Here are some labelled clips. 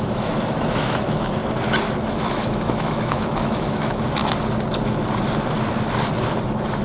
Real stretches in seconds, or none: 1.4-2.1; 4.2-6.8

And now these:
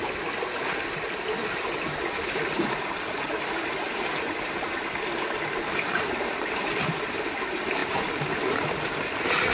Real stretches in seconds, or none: 0.0-9.5

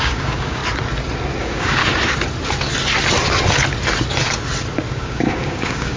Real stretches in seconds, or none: 0.6-1.4; 1.8-4.9

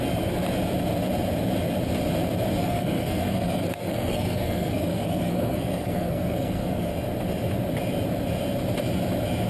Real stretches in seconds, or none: 0.0-2.6; 6.9-9.5

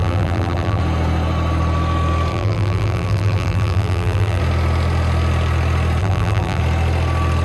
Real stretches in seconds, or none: 0.8-2.3; 4.4-6.0; 6.6-7.4

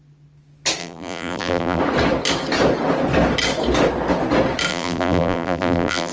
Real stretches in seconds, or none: 0.0-0.8; 1.8-4.7